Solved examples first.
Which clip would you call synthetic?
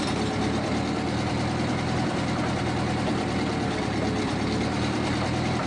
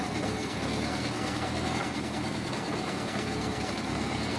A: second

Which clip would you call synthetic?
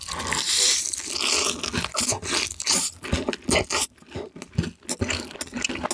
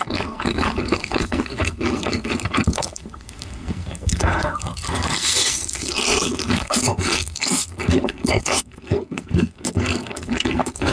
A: second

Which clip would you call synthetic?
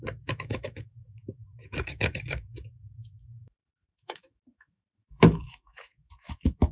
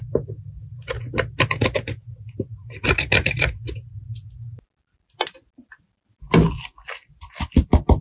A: first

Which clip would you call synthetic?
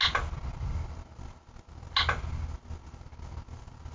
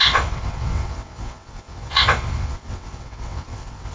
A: second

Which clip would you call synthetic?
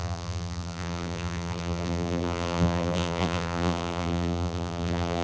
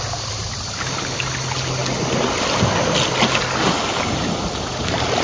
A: first